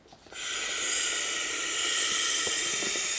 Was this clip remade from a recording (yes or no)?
no